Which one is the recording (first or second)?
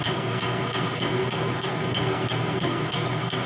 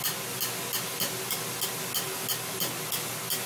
second